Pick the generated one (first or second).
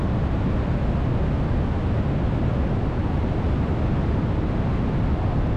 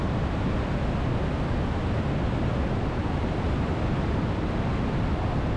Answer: second